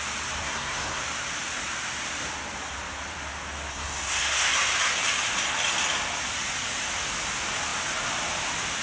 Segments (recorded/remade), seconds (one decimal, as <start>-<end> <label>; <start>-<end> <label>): 0.0-0.4 recorded; 0.4-1.0 remade; 1.0-3.7 recorded; 3.7-4.5 remade; 4.5-8.8 recorded